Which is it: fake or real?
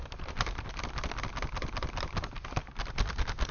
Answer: real